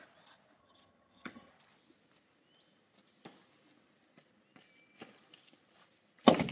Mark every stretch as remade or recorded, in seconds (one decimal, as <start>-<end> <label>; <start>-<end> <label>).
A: 0.0-0.6 recorded; 0.6-1.5 remade; 1.5-6.5 recorded